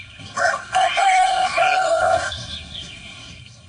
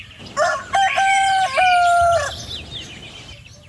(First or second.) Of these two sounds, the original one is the second